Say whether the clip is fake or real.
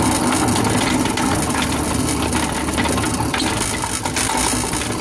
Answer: real